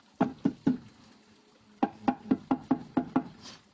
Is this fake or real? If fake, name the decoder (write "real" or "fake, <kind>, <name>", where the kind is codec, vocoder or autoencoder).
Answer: real